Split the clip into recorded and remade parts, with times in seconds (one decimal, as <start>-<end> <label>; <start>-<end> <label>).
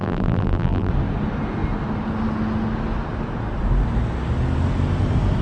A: 0.0-0.9 remade; 0.9-5.4 recorded